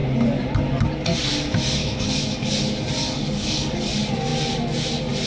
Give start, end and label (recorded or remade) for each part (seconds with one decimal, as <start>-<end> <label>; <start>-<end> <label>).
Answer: 0.0-1.8 recorded; 1.8-2.5 remade; 2.5-3.0 recorded; 3.0-3.9 remade; 3.9-5.3 recorded